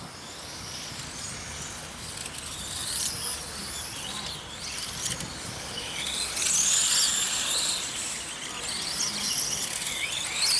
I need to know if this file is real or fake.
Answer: real